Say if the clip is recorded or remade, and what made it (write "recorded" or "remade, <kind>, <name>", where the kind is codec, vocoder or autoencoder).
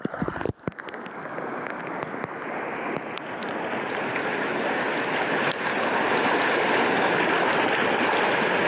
recorded